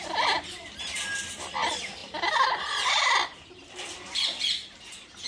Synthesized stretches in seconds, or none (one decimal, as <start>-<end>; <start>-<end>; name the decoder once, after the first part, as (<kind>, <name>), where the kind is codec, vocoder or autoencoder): none